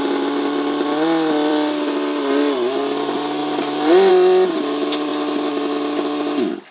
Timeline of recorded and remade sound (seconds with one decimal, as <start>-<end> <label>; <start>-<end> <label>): 0.0-5.1 remade; 5.1-6.7 recorded